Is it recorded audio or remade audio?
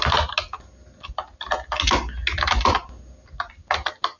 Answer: recorded